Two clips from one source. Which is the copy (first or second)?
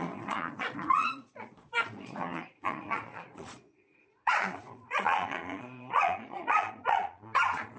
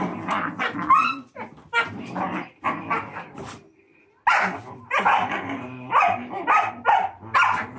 first